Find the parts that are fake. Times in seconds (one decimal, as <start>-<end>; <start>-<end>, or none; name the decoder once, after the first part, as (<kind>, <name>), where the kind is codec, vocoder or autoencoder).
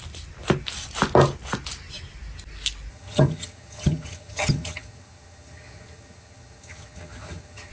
2.9-7.7 (vocoder, HiFi-GAN)